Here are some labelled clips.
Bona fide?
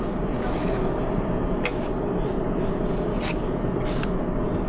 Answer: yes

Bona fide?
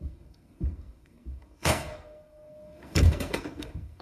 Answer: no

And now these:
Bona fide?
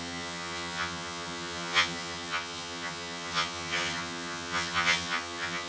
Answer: no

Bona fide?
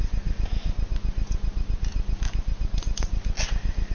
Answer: yes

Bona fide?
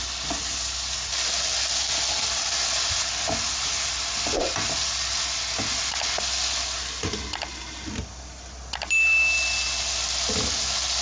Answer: yes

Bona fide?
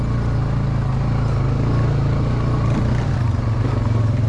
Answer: yes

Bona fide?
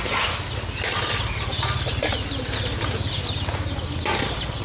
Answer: yes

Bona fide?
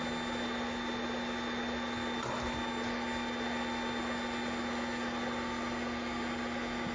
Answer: yes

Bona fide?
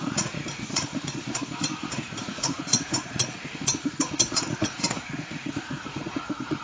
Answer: no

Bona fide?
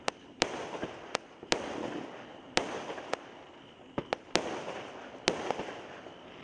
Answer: yes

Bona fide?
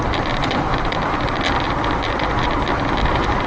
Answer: yes